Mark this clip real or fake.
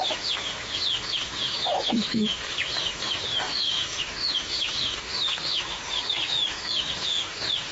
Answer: fake